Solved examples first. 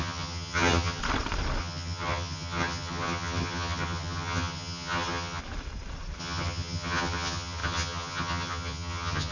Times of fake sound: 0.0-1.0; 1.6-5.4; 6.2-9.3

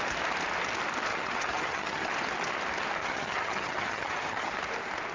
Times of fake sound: 1.1-2.1; 3.0-4.5

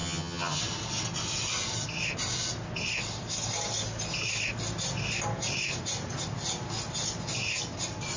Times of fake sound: 0.0-0.6

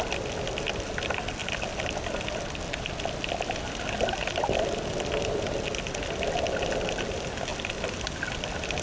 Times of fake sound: none